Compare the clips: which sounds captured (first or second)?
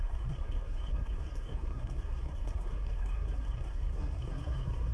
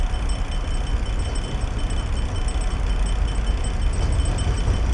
second